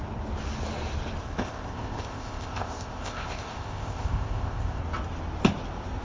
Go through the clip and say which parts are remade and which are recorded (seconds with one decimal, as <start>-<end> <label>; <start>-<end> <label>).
0.0-1.2 recorded; 1.2-4.8 remade; 4.8-6.0 recorded